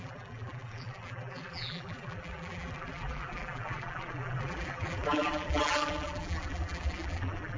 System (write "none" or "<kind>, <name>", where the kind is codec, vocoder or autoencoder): vocoder, BigVGAN v2